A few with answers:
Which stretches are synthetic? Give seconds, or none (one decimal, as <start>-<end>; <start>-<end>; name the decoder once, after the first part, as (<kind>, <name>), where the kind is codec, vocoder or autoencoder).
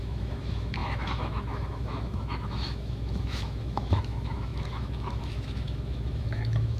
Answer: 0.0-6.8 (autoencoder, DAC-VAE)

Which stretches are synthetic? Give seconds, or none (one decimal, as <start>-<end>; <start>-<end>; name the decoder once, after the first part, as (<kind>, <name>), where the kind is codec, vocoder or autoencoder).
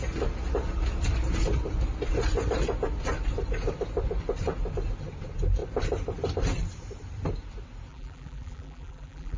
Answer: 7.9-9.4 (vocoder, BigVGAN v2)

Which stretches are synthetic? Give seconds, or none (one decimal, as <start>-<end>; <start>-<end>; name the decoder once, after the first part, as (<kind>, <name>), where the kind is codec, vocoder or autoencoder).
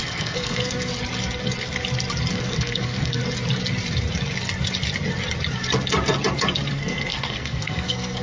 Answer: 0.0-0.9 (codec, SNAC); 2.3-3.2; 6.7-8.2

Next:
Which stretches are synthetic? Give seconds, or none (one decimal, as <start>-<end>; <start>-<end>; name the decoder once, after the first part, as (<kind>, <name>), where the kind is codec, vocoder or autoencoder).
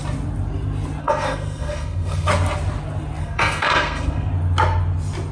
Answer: 1.0-2.3 (codec, SNAC); 3.2-4.3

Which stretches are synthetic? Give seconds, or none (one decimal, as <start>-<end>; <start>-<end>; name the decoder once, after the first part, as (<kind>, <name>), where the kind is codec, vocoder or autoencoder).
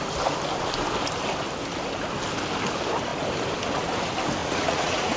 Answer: 4.4-5.2 (vocoder, Vocos)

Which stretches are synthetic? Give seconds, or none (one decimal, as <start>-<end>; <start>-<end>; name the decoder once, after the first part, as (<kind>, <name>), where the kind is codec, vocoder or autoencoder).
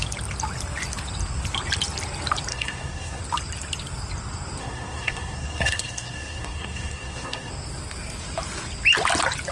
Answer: 2.5-3.2 (codec, SNAC); 4.6-7.5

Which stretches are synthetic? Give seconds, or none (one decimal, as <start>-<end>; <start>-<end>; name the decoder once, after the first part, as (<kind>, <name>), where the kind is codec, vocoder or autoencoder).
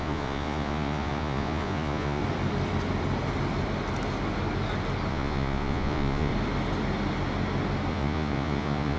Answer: 0.0-2.2 (vocoder, Vocos); 5.1-6.3; 7.9-9.0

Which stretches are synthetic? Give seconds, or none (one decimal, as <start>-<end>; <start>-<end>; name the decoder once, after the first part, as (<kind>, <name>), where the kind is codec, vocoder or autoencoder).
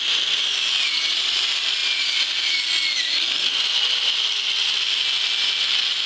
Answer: none